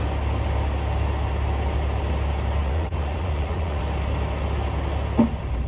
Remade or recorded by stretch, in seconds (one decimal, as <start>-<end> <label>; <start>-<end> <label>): 0.0-2.6 recorded; 2.6-3.8 remade; 3.8-5.7 recorded